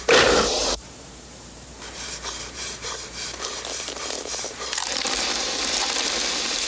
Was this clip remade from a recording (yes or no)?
yes